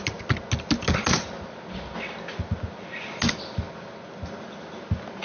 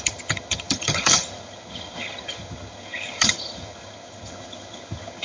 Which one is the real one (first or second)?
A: first